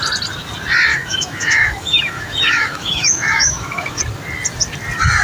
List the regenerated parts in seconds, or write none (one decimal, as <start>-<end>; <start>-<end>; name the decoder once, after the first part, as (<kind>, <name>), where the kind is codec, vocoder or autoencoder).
0.9-4.0 (autoencoder, DAC-VAE)